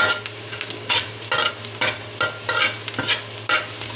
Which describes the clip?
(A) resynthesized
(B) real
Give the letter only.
B